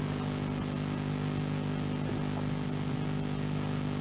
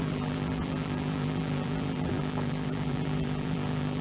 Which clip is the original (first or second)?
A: first